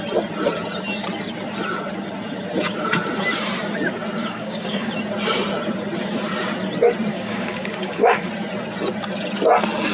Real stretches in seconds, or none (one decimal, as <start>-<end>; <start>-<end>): 0.0-4.2; 4.9-7.1; 8.3-9.9